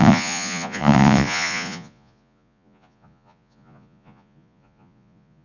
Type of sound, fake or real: fake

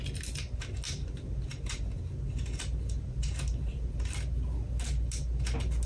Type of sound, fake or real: real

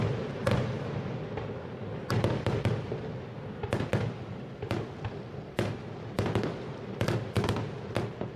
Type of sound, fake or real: real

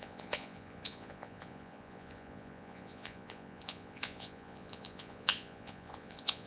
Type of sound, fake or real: fake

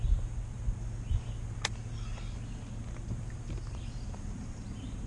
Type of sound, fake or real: real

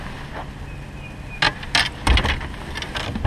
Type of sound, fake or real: real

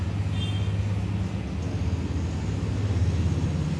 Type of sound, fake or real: real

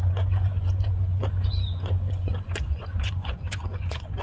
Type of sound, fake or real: fake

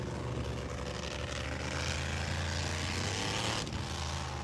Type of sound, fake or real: real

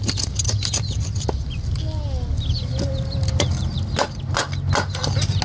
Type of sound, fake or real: real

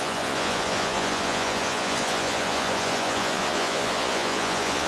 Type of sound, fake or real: fake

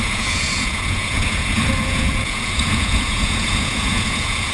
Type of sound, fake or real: fake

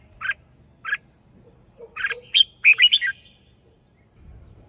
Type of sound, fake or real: real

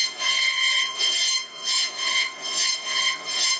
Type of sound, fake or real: fake